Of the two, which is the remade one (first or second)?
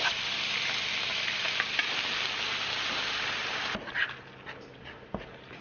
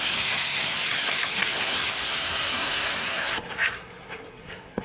second